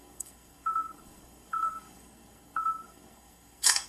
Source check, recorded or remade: remade